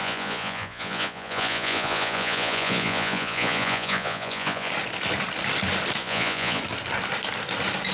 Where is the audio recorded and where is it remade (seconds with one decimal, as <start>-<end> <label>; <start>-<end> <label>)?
0.0-4.7 remade; 4.7-6.0 recorded; 6.0-6.6 remade; 6.6-7.9 recorded